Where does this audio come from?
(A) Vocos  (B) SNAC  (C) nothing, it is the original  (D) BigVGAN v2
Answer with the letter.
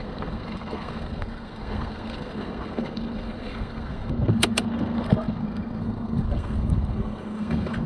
B